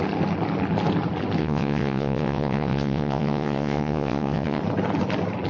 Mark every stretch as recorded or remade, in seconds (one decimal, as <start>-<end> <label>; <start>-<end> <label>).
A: 0.0-1.4 recorded; 1.4-4.6 remade; 4.6-5.5 recorded